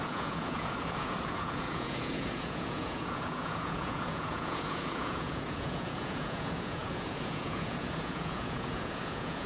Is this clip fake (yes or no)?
yes